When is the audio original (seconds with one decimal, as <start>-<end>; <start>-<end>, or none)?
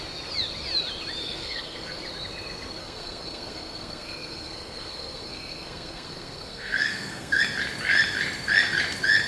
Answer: 0.0-1.2; 2.0-2.8; 7.4-9.3